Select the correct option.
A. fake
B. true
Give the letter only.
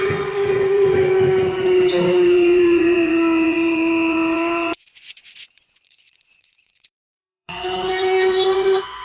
A